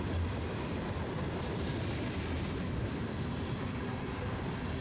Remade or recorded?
remade